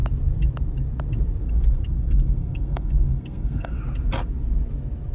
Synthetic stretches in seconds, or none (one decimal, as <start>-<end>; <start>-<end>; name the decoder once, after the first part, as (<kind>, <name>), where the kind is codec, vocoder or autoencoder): 1.4-3.8 (codec, SNAC)